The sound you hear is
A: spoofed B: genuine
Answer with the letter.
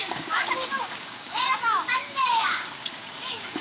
A